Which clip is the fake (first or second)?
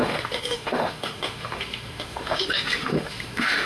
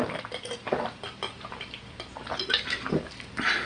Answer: first